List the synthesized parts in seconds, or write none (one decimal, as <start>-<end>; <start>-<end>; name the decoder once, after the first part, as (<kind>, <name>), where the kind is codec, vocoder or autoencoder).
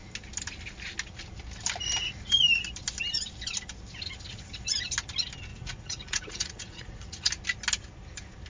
5.5-7.3 (vocoder, Vocos)